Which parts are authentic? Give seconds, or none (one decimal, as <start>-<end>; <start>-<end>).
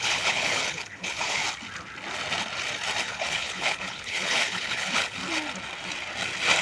1.4-3.0; 5.2-6.6